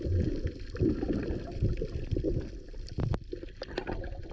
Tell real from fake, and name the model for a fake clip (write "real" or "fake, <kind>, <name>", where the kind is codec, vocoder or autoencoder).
fake, vocoder, BigVGAN v2